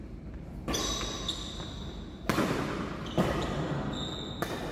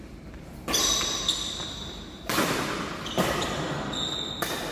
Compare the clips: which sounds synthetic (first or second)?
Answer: second